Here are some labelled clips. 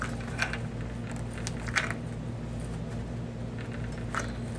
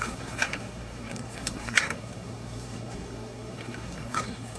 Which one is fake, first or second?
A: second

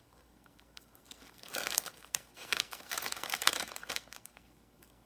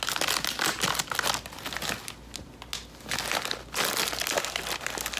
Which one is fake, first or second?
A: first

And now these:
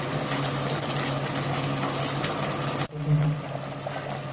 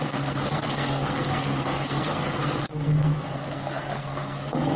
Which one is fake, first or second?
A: second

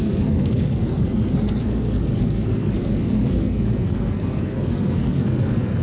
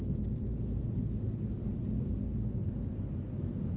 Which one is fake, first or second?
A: first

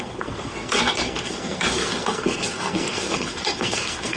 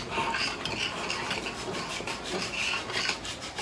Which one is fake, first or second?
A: first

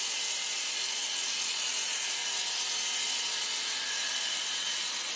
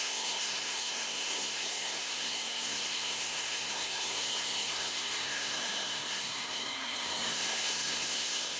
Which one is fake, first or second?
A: second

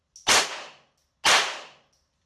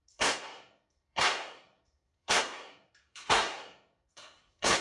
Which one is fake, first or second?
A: second